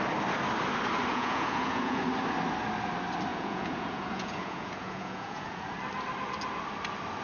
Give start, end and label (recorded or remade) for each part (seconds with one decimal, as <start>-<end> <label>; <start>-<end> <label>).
0.0-1.1 recorded; 1.1-2.0 remade; 2.0-3.3 recorded; 3.3-5.7 remade; 5.7-7.2 recorded